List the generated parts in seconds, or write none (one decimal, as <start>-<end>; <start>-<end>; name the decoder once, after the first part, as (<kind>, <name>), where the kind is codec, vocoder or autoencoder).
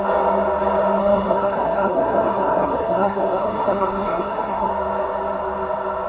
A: 1.0-4.7 (codec, SNAC)